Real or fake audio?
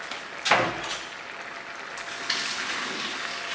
real